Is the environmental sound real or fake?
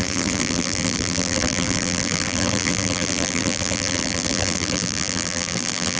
fake